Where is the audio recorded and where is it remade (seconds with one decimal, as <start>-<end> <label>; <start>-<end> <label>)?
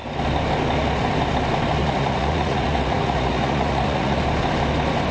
0.0-1.8 recorded; 1.8-4.2 remade; 4.2-5.1 recorded